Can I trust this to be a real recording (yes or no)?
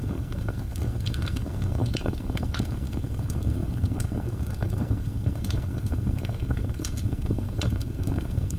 no